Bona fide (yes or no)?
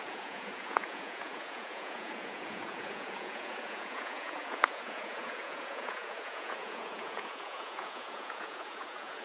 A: no